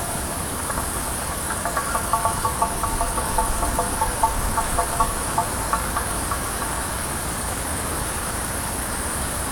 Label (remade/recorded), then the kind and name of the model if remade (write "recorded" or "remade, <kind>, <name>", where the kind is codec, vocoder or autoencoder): remade, codec, DAC